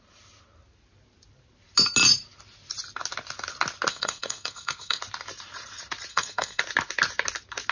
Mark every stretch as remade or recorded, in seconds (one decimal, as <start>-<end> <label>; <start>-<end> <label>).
0.0-3.9 recorded; 3.9-5.0 remade; 5.0-6.1 recorded; 6.1-6.6 remade; 6.6-7.7 recorded